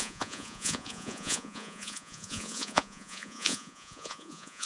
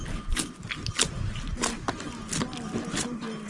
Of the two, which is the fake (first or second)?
first